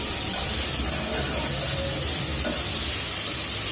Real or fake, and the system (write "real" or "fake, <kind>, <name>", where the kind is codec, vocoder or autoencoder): real